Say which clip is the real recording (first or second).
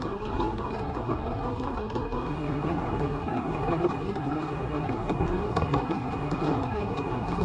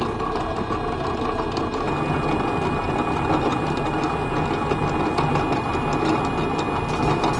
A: second